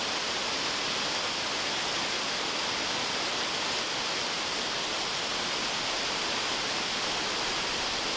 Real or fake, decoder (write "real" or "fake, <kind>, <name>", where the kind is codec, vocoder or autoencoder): real